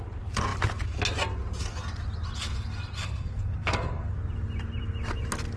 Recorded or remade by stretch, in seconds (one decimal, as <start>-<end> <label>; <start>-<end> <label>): 0.0-3.0 recorded; 3.0-4.1 remade; 4.1-5.6 recorded